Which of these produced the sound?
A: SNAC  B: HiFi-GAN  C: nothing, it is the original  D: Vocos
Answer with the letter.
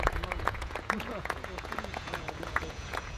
D